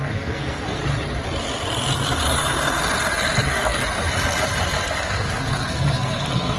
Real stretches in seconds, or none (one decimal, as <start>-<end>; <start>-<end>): 0.8-3.4; 3.8-5.0